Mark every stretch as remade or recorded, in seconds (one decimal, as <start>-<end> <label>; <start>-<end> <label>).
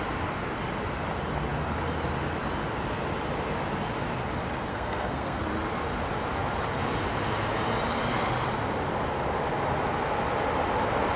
0.0-4.7 recorded; 4.7-5.4 remade; 5.4-11.2 recorded